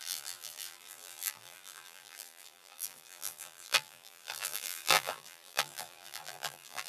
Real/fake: fake